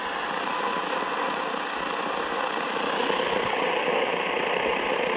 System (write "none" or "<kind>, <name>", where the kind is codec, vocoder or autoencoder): none